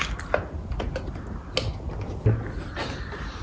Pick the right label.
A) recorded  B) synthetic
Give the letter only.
A